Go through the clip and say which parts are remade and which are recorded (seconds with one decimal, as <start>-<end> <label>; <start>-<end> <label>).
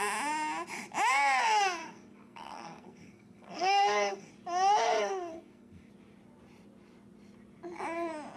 0.0-1.8 recorded; 1.8-4.3 remade; 4.3-4.8 recorded; 4.8-5.9 remade; 5.9-8.4 recorded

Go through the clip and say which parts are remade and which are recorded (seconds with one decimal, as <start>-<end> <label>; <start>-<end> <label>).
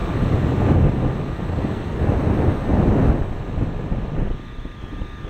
0.0-1.5 recorded; 1.5-2.0 remade; 2.0-5.3 recorded